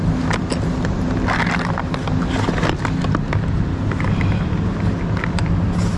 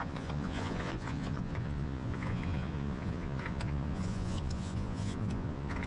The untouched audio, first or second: first